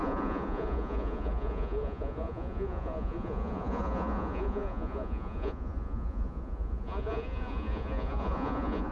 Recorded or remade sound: remade